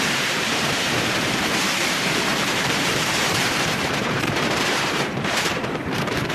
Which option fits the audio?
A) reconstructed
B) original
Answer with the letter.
A